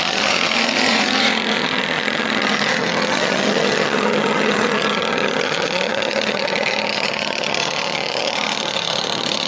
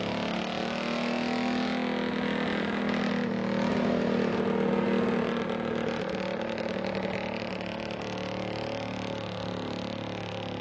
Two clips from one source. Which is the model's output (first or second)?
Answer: first